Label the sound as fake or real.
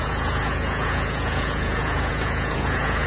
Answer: fake